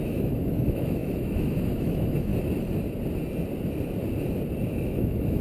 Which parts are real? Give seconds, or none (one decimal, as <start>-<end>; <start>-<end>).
2.3-4.7